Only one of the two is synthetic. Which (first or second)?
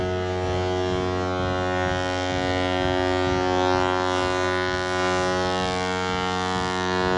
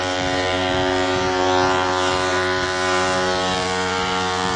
second